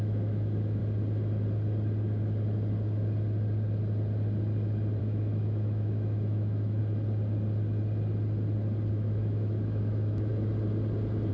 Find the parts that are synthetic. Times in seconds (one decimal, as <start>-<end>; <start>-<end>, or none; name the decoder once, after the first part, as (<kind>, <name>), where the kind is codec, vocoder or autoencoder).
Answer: 0.0-0.8 (autoencoder, DAC-VAE); 5.0-6.8; 8.9-10.3